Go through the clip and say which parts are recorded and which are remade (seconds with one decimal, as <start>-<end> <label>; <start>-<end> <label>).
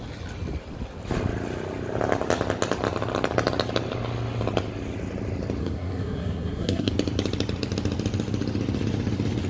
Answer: 0.0-5.6 recorded; 5.6-6.9 remade; 6.9-9.5 recorded